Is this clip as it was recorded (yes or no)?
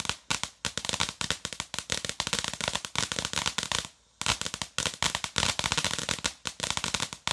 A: yes